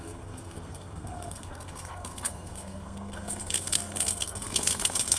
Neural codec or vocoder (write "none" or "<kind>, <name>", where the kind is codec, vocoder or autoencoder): codec, SNAC